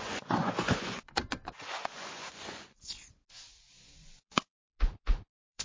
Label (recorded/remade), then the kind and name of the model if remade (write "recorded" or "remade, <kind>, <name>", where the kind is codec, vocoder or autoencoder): remade, vocoder, Vocos